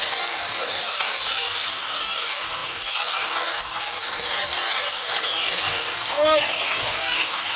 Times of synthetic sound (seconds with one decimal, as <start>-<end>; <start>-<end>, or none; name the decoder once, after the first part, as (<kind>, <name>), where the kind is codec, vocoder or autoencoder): 0.0-7.6 (codec, DAC)